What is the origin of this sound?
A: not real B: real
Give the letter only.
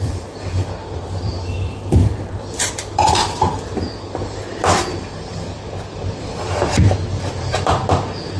A